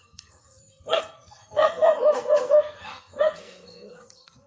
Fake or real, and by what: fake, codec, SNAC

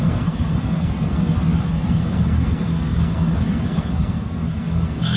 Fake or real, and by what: fake, codec, SNAC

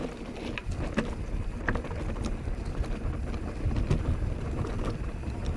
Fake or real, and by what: fake, vocoder, BigVGAN v2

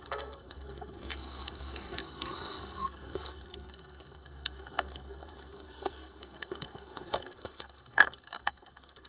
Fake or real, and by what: fake, codec, SNAC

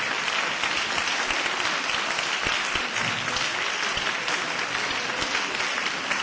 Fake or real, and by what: real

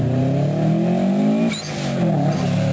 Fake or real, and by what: real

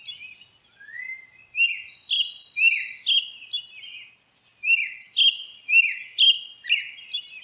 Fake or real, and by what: real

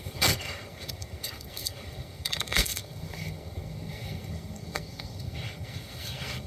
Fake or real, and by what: fake, codec, SNAC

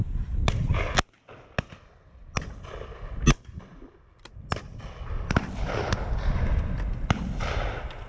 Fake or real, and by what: real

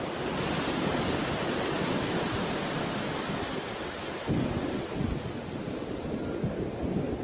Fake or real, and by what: real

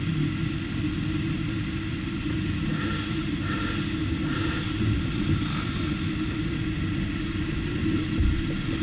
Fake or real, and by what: real